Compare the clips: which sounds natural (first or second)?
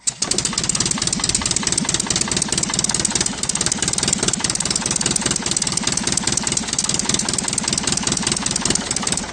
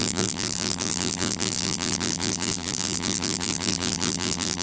first